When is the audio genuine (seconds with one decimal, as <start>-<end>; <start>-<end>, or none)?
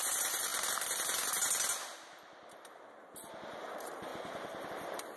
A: 0.5-3.6; 4.1-4.7